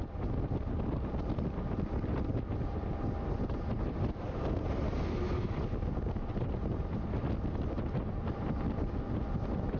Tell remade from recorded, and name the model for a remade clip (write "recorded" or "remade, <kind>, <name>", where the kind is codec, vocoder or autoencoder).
recorded